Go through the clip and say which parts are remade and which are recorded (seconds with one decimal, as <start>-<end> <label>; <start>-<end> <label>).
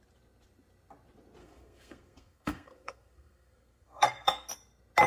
0.0-1.4 recorded; 1.4-4.5 remade; 4.5-5.1 recorded